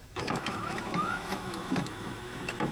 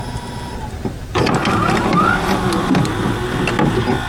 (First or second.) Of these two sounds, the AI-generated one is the first